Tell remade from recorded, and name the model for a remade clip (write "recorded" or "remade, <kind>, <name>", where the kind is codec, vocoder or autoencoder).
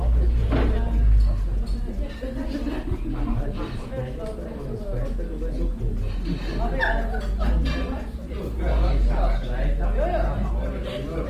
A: recorded